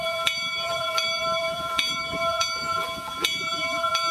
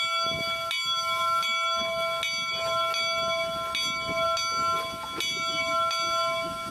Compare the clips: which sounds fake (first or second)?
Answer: first